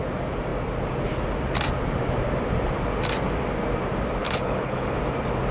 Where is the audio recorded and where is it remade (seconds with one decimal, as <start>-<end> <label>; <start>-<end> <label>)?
0.0-4.2 recorded; 4.2-5.0 remade; 5.0-5.5 recorded